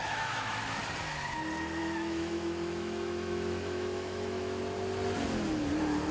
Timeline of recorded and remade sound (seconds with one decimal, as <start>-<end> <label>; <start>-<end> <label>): 0.0-0.8 remade; 0.8-1.8 recorded; 1.8-4.6 remade; 4.6-6.1 recorded

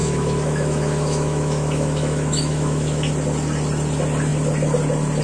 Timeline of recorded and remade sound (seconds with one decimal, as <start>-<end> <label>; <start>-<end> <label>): 0.0-3.1 remade; 3.1-5.2 recorded